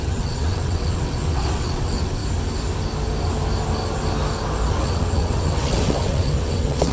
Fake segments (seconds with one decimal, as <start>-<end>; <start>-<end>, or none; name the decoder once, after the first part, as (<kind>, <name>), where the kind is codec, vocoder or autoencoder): 0.0-2.2 (vocoder, WaveNeXt); 4.7-6.9